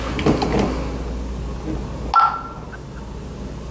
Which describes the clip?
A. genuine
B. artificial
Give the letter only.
A